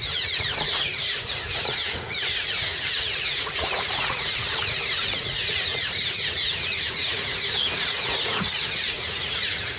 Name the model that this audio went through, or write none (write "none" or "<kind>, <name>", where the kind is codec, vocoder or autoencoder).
vocoder, Vocos